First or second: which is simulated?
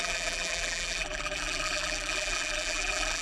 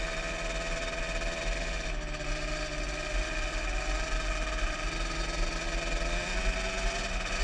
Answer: first